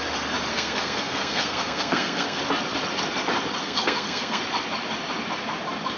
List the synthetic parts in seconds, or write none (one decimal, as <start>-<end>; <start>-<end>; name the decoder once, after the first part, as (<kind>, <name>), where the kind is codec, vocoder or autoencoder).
0.5-2.4 (codec, SNAC); 3.6-4.4